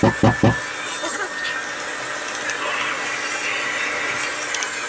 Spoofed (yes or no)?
no